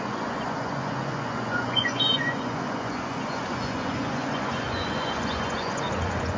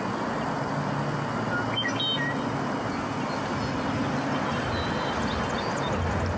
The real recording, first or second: second